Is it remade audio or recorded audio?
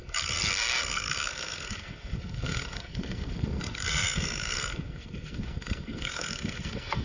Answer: remade